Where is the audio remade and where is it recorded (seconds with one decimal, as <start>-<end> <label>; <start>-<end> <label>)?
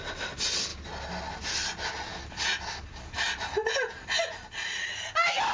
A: 0.0-5.5 recorded